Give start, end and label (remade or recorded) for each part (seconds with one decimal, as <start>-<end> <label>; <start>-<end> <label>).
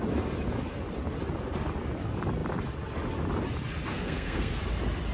0.0-3.9 recorded; 3.9-4.6 remade; 4.6-5.1 recorded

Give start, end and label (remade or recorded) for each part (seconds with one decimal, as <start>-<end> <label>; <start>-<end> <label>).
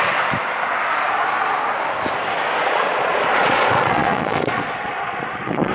0.0-2.6 recorded; 2.6-5.7 remade